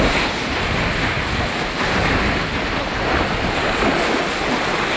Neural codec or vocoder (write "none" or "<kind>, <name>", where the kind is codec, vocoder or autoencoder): none